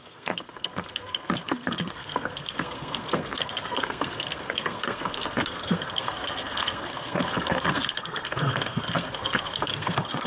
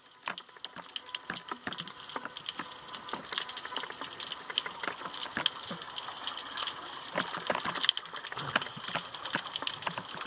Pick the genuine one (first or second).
second